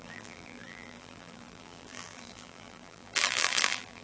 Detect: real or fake fake